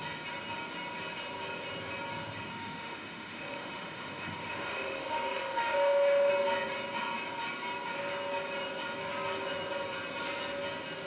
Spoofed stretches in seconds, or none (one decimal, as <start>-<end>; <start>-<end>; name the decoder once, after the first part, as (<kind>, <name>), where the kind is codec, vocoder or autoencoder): 2.5-6.3 (autoencoder, DAC-VAE)